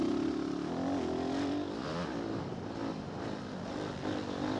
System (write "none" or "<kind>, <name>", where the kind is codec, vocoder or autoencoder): none